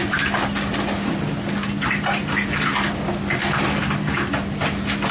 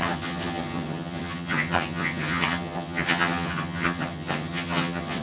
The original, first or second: first